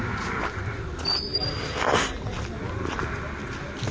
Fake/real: real